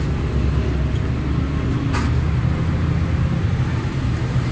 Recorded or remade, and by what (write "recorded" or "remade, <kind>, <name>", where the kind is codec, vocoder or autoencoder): recorded